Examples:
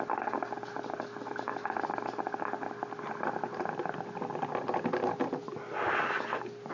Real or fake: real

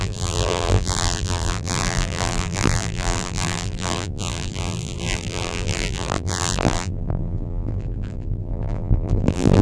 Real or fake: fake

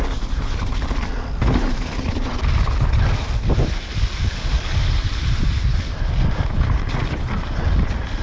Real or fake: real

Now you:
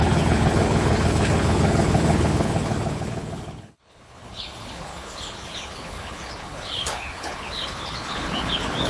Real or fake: fake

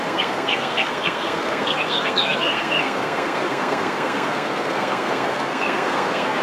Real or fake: fake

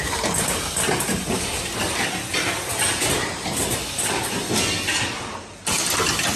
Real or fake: real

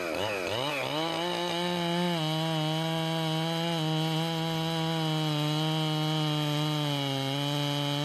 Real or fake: real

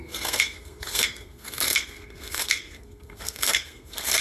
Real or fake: fake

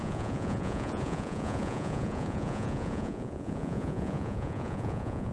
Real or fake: fake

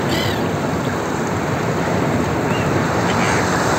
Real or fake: real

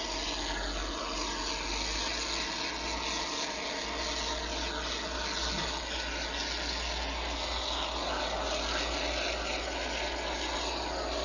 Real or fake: real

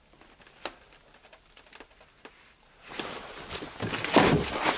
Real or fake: real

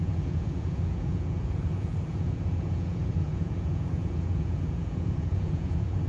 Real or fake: fake